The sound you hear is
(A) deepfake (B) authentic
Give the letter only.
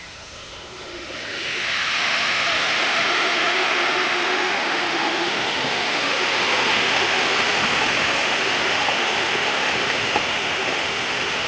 A